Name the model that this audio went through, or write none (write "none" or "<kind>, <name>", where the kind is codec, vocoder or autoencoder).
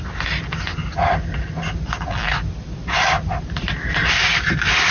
none